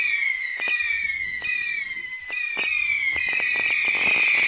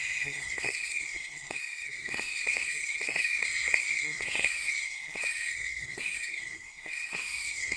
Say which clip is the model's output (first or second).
second